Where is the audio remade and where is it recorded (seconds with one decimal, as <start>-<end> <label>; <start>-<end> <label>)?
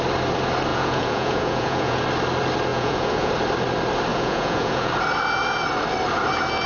0.0-0.7 recorded; 0.7-2.0 remade; 2.0-2.7 recorded; 2.7-3.3 remade; 3.3-4.1 recorded; 4.1-4.9 remade; 4.9-6.7 recorded